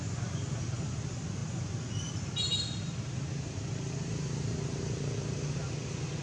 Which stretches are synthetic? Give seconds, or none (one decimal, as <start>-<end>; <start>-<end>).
none